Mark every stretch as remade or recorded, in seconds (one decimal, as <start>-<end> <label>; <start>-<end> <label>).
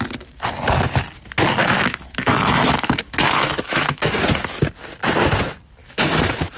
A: 0.0-1.6 recorded; 1.6-4.0 remade; 4.0-5.8 recorded; 5.8-6.6 remade